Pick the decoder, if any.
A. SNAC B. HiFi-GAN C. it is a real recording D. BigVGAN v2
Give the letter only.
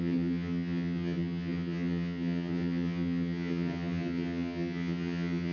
B